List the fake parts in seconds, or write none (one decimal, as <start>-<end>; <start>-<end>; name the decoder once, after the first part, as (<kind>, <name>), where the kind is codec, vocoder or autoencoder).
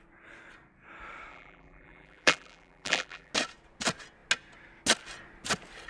1.3-3.3 (vocoder, BigVGAN v2)